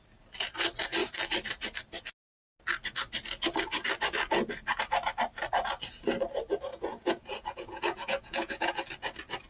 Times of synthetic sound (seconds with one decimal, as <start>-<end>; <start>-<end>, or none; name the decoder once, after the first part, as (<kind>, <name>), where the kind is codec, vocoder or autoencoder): 6.7-8.7 (vocoder, Vocos)